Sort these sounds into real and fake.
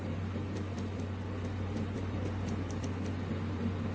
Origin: real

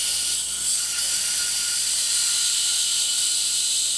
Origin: real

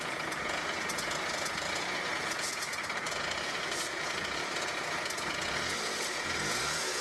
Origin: fake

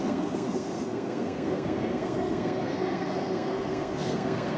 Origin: fake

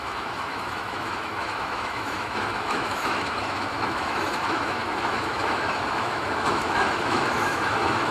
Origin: fake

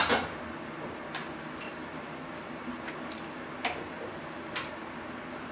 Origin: real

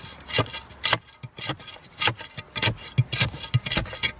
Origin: real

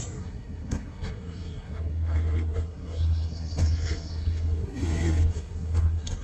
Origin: fake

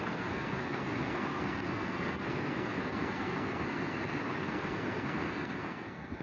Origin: fake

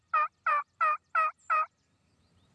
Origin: fake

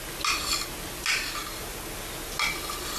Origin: real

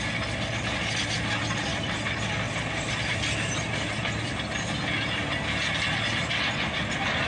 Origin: real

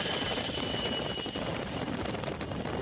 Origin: real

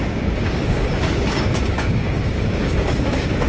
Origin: fake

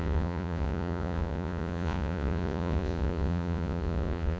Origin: fake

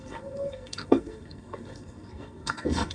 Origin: fake